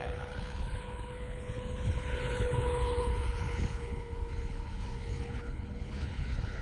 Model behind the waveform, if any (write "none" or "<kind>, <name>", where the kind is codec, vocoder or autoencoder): codec, HILCodec